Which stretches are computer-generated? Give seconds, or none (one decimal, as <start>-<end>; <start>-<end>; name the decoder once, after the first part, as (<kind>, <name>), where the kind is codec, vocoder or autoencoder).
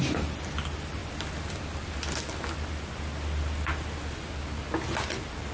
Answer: none